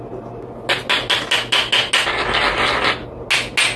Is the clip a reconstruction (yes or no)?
no